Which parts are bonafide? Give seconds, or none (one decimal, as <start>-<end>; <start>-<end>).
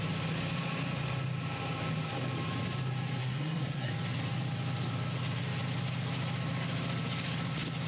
0.0-3.2; 3.9-7.9